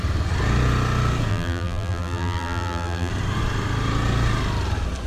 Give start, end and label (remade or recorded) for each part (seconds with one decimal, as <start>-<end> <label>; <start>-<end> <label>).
0.0-1.3 recorded; 1.3-3.1 remade; 3.1-5.1 recorded